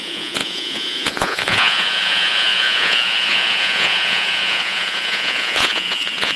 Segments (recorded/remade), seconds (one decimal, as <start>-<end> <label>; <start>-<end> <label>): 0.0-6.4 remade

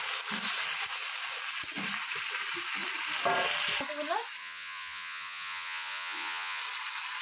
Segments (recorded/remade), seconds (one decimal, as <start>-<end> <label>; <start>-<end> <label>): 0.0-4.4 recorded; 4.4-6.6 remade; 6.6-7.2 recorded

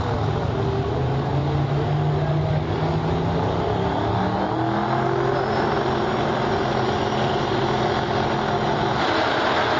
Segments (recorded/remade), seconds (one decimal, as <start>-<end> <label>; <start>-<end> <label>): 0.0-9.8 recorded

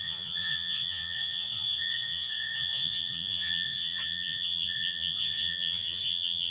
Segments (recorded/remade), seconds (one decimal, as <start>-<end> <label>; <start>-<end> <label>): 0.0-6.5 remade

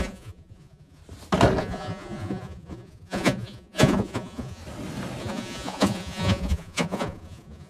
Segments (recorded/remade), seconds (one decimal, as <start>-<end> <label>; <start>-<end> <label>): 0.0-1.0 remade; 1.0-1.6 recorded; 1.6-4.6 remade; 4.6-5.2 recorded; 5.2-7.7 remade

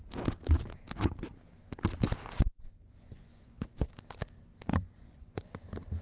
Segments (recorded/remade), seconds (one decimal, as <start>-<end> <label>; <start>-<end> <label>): 0.0-2.8 recorded; 2.8-3.9 remade; 3.9-4.7 recorded; 4.7-5.4 remade; 5.4-6.0 recorded

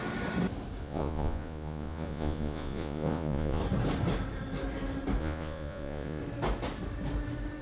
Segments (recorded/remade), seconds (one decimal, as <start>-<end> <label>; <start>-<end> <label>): 0.0-0.8 recorded; 0.8-3.6 remade; 3.6-5.2 recorded; 5.2-6.2 remade; 6.2-7.6 recorded

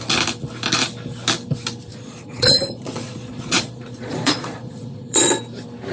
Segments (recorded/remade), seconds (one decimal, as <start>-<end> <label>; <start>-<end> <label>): 0.0-1.9 recorded; 1.9-5.4 remade; 5.4-5.9 recorded